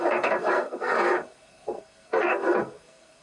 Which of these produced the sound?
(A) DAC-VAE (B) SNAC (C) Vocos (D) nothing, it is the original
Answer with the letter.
B